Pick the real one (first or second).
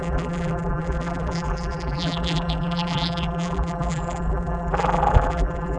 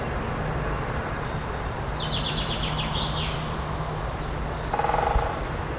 second